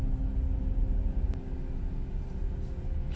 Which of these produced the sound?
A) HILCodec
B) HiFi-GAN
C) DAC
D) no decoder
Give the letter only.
D